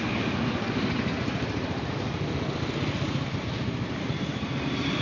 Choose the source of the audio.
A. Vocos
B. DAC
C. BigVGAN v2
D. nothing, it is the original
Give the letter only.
D